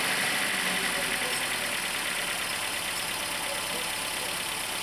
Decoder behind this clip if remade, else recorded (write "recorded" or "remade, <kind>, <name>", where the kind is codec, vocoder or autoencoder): recorded